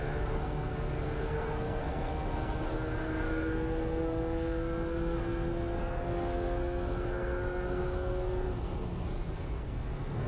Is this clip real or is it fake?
fake